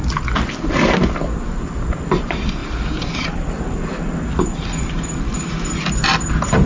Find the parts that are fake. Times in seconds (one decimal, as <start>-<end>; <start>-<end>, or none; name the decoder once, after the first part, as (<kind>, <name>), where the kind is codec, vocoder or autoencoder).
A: none